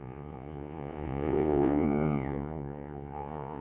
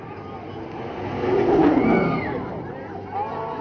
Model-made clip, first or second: first